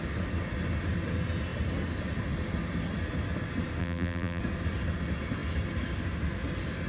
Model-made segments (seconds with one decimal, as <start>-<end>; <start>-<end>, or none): 3.8-4.4